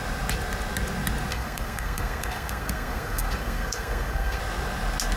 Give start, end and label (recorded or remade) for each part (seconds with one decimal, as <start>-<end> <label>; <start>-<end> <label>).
0.0-1.3 recorded; 1.3-4.4 remade; 4.4-5.2 recorded